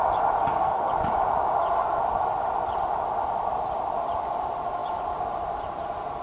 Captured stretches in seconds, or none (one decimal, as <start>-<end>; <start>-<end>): 0.0-0.4; 0.9-6.2